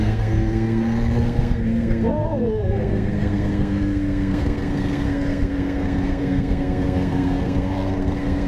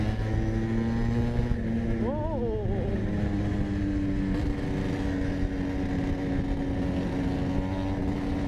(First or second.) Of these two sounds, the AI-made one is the first